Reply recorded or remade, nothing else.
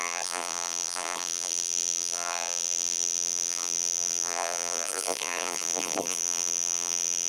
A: remade